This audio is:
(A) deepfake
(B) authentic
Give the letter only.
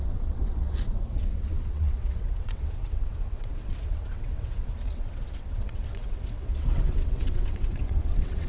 A